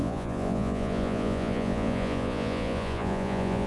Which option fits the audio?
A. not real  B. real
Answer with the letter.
A